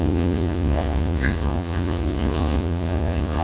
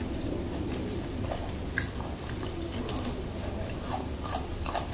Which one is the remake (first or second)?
first